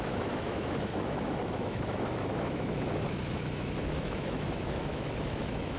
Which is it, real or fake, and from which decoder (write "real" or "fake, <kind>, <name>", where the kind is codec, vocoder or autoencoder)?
fake, autoencoder, DAC-VAE